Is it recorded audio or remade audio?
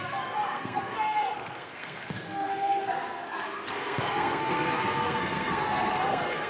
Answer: remade